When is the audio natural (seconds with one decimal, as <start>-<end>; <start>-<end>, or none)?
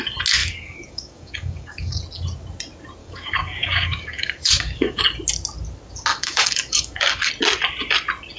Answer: 0.0-0.4; 2.0-3.0; 5.0-6.1; 7.3-8.4